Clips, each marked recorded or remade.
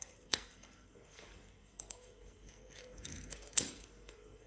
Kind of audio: remade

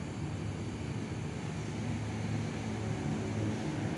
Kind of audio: recorded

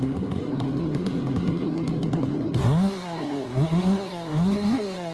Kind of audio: remade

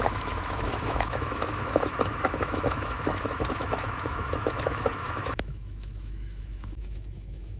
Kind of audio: remade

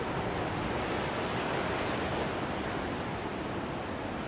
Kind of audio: recorded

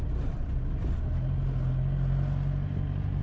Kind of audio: recorded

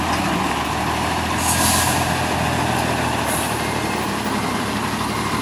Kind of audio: recorded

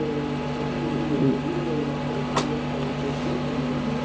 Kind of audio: recorded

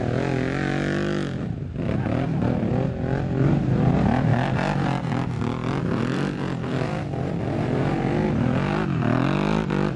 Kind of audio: recorded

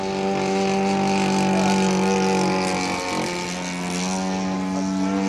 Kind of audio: recorded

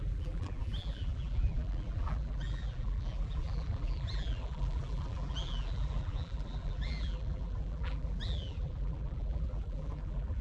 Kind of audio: remade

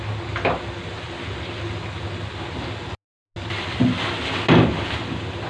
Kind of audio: recorded